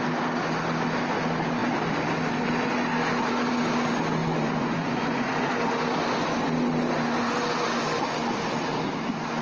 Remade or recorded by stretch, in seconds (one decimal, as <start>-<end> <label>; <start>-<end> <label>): 0.0-4.2 recorded; 4.2-5.5 remade; 5.5-9.4 recorded

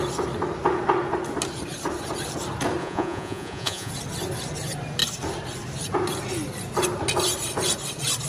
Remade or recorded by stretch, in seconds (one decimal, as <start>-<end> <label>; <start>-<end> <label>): 0.0-2.8 recorded; 2.8-3.9 remade; 3.9-8.3 recorded

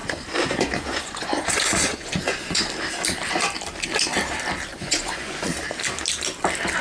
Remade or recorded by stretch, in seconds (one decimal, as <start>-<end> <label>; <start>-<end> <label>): 0.0-2.7 remade; 2.7-4.7 recorded; 4.7-5.5 remade; 5.5-6.8 recorded

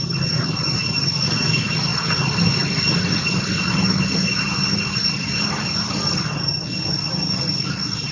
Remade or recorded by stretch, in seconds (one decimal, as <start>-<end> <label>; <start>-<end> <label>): 0.0-8.1 recorded